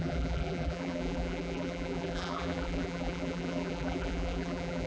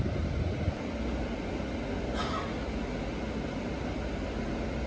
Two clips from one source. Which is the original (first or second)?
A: second